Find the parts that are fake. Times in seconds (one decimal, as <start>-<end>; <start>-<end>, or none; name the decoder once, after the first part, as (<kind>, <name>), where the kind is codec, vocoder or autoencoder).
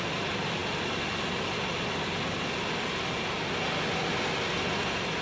none